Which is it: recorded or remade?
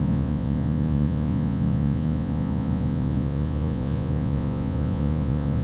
remade